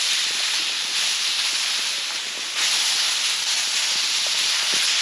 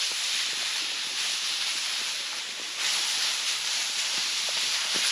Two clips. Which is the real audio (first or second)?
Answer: first